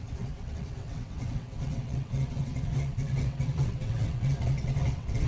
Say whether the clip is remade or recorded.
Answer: remade